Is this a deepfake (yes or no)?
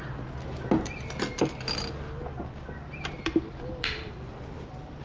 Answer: no